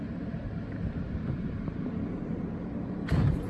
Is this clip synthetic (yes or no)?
yes